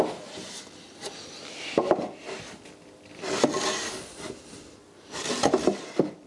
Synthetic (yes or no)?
no